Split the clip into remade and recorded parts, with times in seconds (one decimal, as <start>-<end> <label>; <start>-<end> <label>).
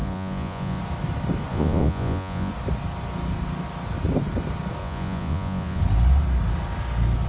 0.0-0.8 remade; 0.8-1.5 recorded; 1.5-2.5 remade; 2.5-4.8 recorded; 4.8-5.8 remade; 5.8-7.3 recorded